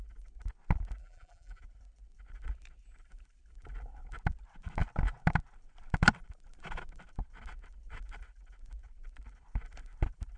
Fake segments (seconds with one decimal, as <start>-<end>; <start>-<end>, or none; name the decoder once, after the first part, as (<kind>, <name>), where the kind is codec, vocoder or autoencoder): 1.0-1.6 (vocoder, BigVGAN v2)